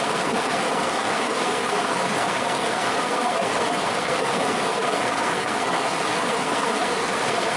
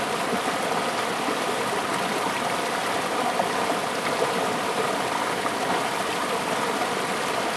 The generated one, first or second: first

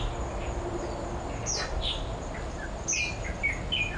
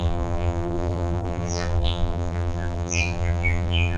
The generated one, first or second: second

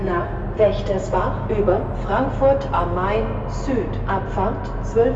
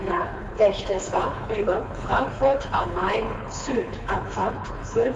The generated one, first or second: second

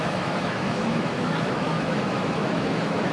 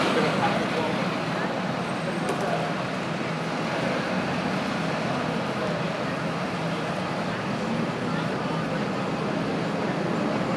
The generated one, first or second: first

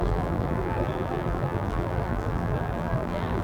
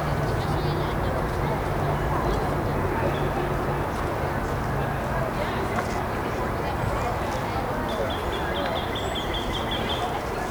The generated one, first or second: first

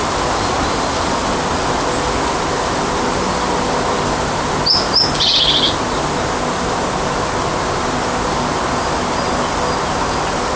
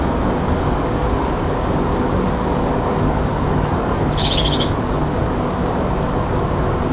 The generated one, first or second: second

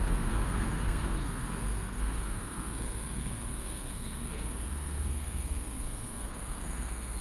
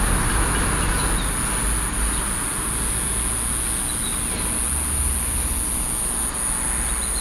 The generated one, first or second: first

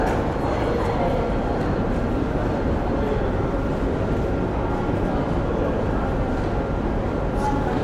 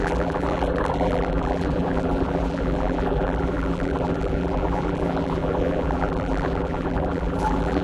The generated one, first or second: second